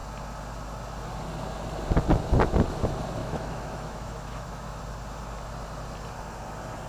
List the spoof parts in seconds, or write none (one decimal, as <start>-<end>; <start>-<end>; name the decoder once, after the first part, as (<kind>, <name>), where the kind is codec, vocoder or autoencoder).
3.2-4.8 (autoencoder, DAC-VAE)